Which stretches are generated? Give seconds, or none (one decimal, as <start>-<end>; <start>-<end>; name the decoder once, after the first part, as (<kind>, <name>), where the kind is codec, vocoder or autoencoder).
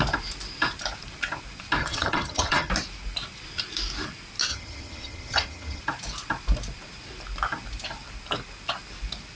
1.8-2.7 (vocoder, HiFi-GAN); 4.5-5.8